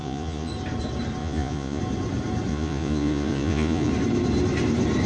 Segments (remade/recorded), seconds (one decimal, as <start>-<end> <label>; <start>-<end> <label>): 0.0-0.5 remade; 0.5-1.2 recorded; 1.2-1.8 remade; 1.8-2.5 recorded; 2.5-3.9 remade; 3.9-5.1 recorded